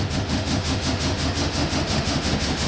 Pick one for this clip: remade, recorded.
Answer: remade